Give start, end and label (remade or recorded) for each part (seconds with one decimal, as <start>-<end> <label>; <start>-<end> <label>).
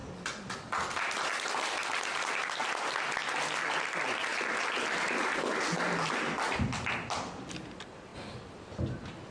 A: 0.0-9.3 recorded